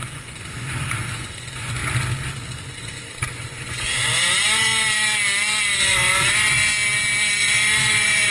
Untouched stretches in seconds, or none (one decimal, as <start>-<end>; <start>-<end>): 1.8-2.5; 4.7-5.8; 6.7-7.4